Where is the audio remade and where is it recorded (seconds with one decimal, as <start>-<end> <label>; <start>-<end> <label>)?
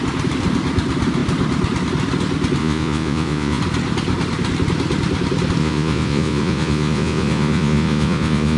0.0-2.6 recorded; 2.6-3.6 remade; 3.6-5.6 recorded; 5.6-8.6 remade